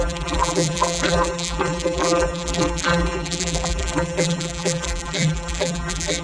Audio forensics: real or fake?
fake